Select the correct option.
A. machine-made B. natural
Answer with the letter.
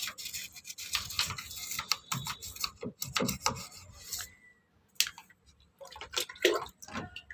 B